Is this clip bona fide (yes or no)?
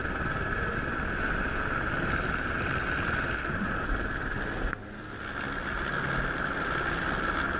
yes